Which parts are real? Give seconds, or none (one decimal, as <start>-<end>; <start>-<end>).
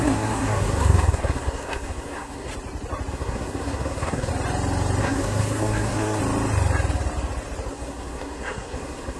2.5-3.1; 4.3-5.0; 6.2-7.7